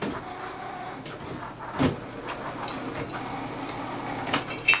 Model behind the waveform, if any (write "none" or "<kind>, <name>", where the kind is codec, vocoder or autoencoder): none